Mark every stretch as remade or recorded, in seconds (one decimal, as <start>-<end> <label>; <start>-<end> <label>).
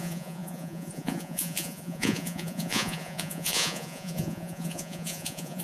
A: 0.0-5.6 remade